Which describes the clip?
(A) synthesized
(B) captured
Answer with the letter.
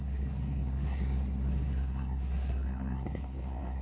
A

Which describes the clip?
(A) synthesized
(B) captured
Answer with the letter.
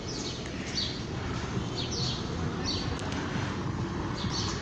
B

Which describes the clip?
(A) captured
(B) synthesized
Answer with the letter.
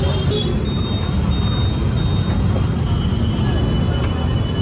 A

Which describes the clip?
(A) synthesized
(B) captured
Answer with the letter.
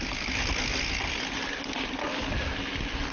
B